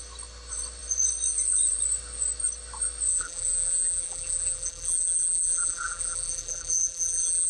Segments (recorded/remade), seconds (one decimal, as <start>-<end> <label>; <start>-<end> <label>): 0.0-3.1 recorded; 3.1-7.5 remade